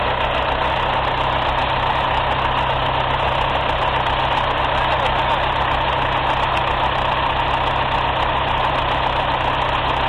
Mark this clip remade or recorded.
recorded